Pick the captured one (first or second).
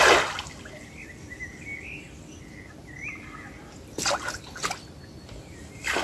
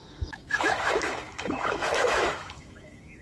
first